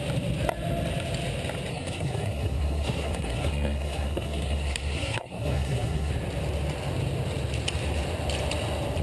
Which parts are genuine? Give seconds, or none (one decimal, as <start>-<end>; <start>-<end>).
0.0-1.7; 6.1-9.0